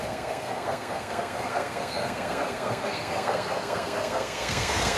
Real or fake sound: fake